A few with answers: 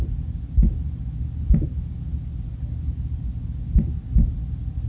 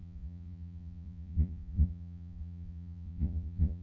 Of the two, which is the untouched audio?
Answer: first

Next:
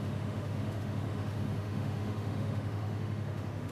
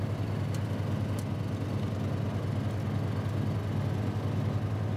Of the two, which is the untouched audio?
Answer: second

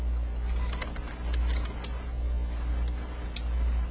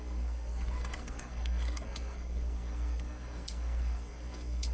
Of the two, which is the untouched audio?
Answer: first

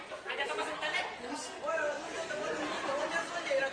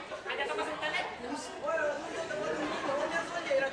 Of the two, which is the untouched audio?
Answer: second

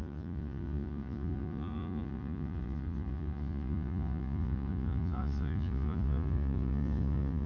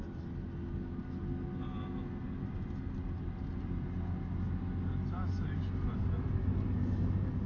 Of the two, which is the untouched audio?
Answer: second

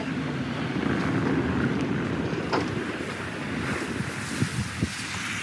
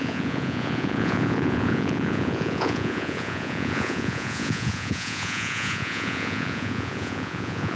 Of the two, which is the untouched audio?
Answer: first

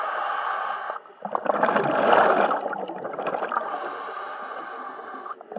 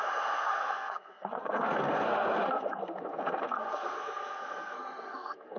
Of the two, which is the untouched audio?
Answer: first